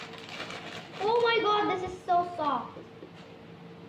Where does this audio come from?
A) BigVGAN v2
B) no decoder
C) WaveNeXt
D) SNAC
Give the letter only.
B